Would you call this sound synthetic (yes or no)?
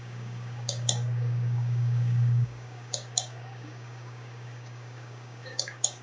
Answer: yes